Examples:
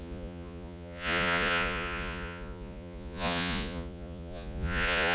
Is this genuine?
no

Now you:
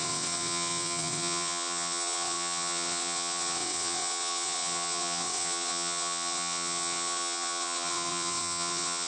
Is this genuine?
no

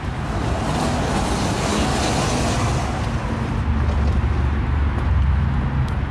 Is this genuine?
yes